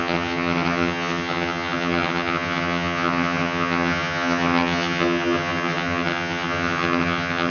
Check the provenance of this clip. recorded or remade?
remade